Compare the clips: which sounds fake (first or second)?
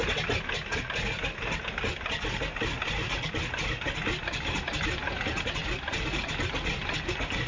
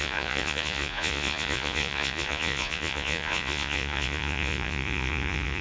second